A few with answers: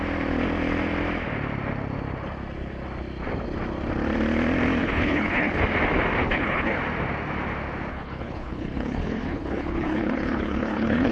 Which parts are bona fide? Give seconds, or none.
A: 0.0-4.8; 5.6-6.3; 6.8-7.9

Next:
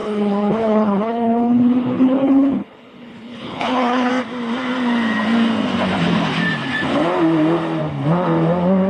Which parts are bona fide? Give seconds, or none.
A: 4.1-8.9

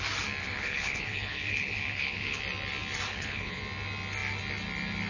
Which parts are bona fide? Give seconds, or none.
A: 0.0-0.4; 2.4-3.1; 3.6-5.1

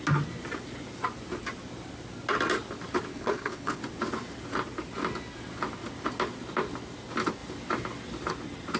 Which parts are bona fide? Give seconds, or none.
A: 0.0-3.1; 3.8-8.8

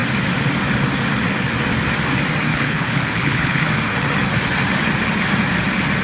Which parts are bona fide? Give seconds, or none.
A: 0.0-2.5; 3.7-6.0

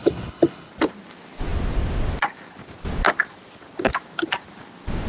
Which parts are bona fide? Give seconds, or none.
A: 0.7-5.1